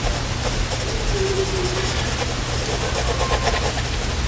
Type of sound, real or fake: real